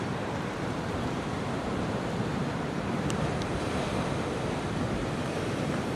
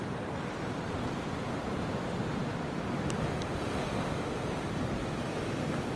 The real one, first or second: second